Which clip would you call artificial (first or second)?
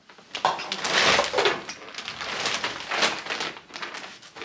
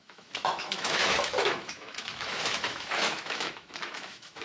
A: second